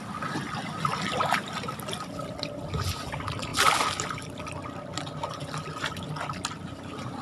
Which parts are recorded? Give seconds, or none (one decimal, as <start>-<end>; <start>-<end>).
0.0-7.2